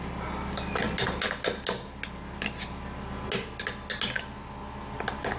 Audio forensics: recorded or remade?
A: recorded